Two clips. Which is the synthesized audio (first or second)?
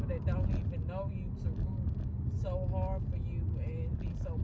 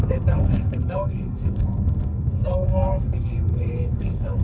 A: second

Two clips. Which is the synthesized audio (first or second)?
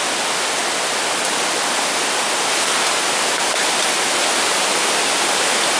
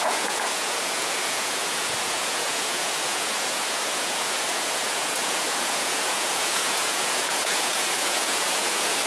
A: second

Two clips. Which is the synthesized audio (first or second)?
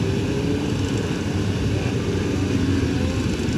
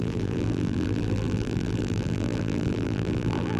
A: second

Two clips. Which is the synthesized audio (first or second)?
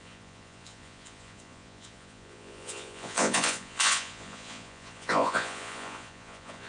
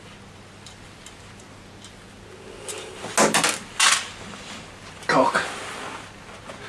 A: first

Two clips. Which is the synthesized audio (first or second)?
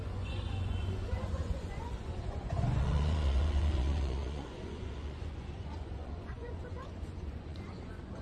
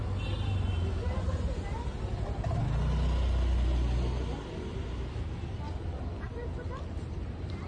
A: first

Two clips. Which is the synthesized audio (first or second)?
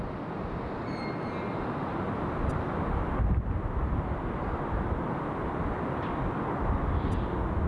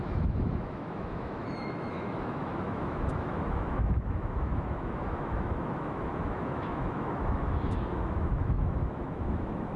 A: second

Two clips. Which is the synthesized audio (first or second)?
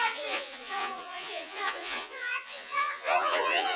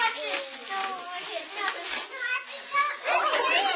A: first